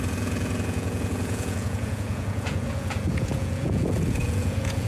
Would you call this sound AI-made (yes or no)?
yes